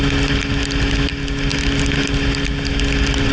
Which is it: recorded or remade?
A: recorded